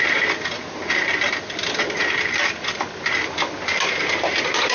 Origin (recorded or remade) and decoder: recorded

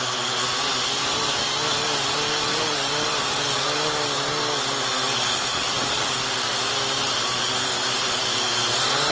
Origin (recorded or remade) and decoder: recorded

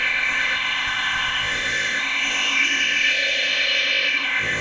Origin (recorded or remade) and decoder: remade, codec, ZipCodec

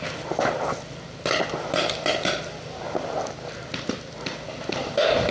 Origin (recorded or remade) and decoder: recorded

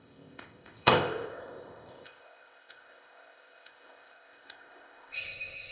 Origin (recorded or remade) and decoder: remade, codec, ZipCodec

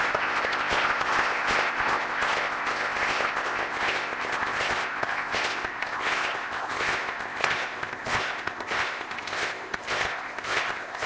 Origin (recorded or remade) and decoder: remade, codec, ZipCodec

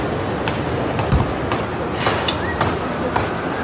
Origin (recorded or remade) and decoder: recorded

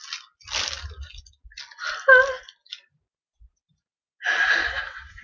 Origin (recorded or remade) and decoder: recorded